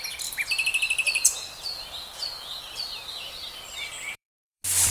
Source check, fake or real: fake